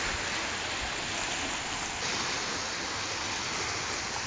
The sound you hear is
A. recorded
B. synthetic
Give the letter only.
A